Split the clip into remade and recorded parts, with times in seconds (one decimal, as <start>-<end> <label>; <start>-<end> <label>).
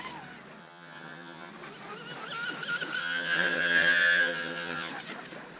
0.0-0.6 recorded; 0.6-1.5 remade; 1.5-3.0 recorded; 3.0-4.9 remade; 4.9-5.6 recorded